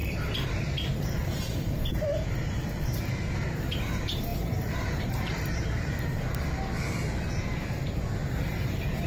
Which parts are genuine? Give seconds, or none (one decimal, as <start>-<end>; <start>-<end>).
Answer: 1.9-4.3; 6.4-8.2